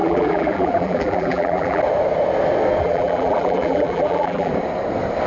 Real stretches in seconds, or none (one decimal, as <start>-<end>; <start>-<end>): 1.8-2.8; 4.5-5.3